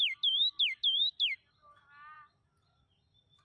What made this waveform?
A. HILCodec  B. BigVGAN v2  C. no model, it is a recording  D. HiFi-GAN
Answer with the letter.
B